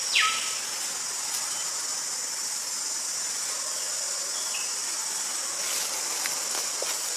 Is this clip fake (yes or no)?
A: no